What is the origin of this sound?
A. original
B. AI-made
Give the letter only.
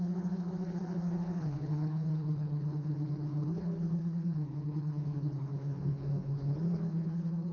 B